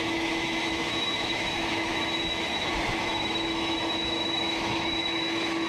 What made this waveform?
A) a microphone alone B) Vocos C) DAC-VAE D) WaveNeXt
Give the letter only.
C